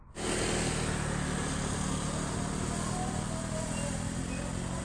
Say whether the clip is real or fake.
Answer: real